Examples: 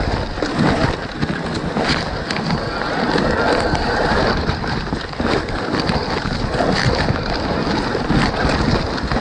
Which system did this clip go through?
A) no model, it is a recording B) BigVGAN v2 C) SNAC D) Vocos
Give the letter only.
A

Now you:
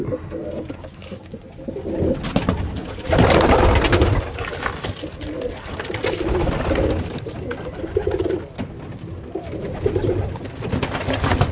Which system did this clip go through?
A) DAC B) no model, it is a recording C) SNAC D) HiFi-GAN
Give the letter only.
B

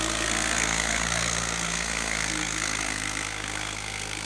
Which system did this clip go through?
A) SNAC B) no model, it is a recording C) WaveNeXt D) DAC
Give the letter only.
A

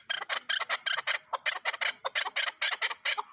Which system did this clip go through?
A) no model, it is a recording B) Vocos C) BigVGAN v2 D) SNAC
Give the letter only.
A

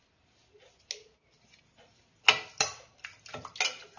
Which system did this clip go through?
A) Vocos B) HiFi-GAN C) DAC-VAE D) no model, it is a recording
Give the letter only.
D